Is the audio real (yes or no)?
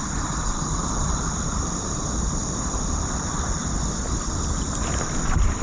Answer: yes